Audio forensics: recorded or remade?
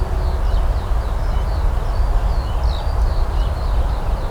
recorded